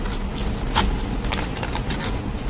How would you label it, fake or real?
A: real